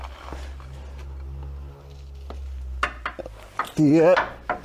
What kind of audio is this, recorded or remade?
recorded